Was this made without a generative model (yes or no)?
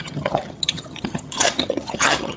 no